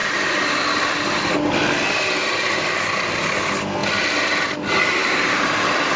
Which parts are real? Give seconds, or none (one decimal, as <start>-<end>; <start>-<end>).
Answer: 0.0-5.0